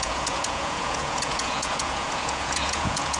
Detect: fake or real fake